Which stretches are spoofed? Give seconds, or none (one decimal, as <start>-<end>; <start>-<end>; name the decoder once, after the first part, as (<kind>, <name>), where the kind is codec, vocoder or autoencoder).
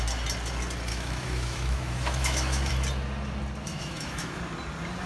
0.9-2.7 (autoencoder, DAC-VAE); 3.7-4.4